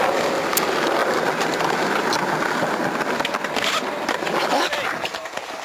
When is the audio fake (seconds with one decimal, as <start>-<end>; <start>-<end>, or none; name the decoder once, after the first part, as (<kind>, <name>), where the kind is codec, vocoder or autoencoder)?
none